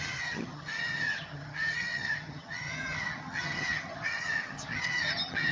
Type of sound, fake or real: fake